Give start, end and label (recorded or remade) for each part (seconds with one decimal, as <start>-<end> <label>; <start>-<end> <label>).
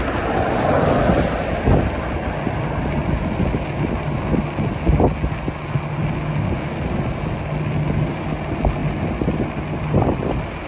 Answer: 0.0-10.7 recorded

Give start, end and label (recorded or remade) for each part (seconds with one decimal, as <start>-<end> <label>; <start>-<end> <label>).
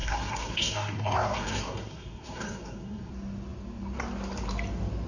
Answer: 0.0-3.1 remade; 3.1-5.1 recorded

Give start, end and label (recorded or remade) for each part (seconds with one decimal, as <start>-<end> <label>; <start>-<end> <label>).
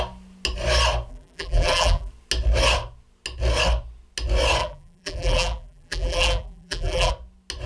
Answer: 0.0-1.1 recorded; 1.1-2.1 remade; 2.1-4.6 recorded; 4.6-7.1 remade; 7.1-7.7 recorded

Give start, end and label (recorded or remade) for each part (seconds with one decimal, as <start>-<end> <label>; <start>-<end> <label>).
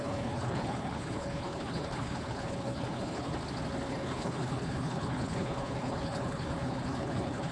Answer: 0.0-3.3 remade; 3.3-3.9 recorded; 3.9-7.5 remade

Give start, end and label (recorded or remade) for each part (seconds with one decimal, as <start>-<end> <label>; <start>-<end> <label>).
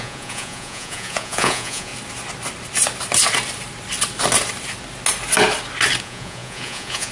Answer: 0.0-1.9 remade; 1.9-6.0 recorded; 6.0-7.1 remade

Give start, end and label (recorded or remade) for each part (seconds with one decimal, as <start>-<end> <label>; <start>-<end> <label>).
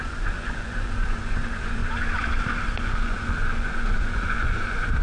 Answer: 0.0-1.8 remade; 1.8-2.8 recorded; 2.8-5.0 remade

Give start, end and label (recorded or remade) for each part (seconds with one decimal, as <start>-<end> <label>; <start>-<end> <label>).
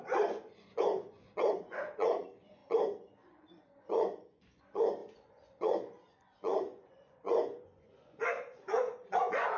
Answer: 0.0-9.6 remade